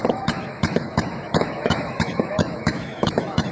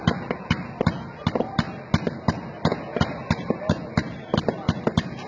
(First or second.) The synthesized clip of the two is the first